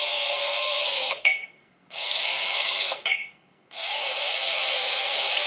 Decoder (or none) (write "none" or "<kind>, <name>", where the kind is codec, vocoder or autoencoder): codec, SNAC